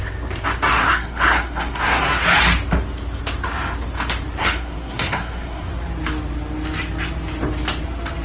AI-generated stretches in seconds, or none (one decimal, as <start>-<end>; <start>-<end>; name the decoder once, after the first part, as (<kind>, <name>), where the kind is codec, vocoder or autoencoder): 0.7-2.0 (codec, SNAC); 4.4-5.7